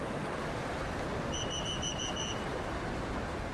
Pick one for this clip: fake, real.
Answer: real